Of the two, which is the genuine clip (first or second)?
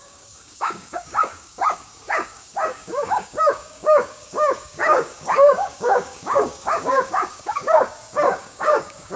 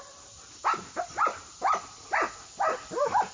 second